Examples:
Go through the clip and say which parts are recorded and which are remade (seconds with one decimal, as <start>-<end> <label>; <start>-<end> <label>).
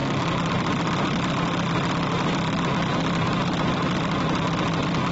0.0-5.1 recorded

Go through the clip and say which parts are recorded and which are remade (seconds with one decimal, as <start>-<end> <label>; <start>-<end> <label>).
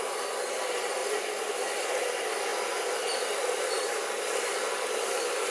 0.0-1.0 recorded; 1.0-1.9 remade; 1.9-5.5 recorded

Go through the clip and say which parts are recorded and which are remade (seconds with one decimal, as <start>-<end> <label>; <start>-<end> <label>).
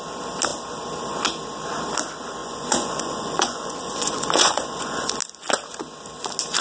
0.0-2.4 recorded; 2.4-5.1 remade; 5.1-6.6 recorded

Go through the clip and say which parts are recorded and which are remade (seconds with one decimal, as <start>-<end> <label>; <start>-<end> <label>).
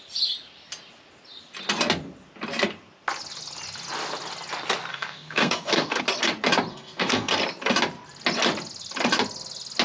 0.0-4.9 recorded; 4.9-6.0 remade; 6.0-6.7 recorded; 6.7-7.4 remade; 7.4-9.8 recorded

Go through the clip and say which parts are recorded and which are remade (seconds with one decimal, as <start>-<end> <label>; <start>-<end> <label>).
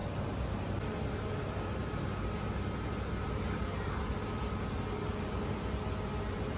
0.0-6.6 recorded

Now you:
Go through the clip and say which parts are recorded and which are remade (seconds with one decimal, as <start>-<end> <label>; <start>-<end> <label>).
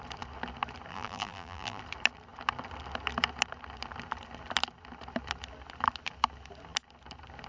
0.0-0.9 recorded; 0.9-1.8 remade; 1.8-7.5 recorded